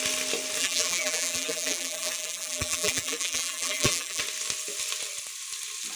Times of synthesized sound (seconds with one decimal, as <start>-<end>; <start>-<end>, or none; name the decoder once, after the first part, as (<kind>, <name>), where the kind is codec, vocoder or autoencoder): 0.6-4.2 (vocoder, BigVGAN v2)